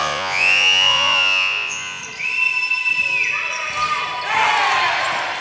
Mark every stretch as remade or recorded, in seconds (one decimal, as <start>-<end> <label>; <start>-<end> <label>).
0.0-2.0 remade; 2.0-5.4 recorded